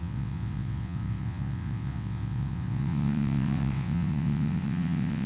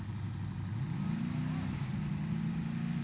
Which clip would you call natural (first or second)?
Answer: second